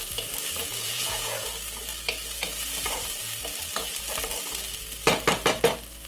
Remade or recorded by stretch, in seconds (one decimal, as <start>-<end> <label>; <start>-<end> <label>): 0.0-0.6 recorded; 0.6-1.5 remade; 1.5-6.1 recorded